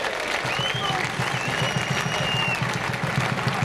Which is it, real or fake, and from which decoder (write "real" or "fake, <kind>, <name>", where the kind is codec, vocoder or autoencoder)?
real